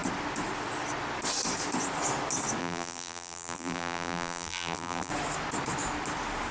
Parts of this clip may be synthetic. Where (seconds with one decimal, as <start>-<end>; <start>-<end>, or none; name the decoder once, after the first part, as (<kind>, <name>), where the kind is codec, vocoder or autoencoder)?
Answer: 2.6-5.1 (vocoder, BigVGAN v2)